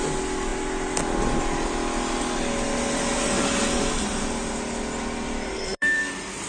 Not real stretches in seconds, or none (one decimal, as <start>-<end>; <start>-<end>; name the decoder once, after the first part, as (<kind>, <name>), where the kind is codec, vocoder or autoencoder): 5.5-6.1 (codec, SNAC)